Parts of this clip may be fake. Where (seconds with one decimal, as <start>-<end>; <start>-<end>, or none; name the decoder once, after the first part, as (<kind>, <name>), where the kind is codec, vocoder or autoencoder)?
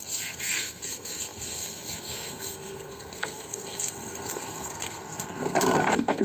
0.0-6.2 (codec, SNAC)